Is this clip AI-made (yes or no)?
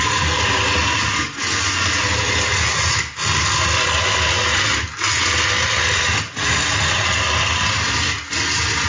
no